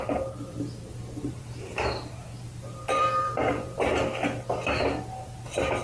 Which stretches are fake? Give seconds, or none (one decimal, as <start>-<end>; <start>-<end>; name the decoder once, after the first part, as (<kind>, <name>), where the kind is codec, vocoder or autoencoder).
0.5-4.0 (vocoder, BigVGAN v2)